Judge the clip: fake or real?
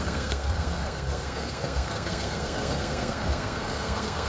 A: fake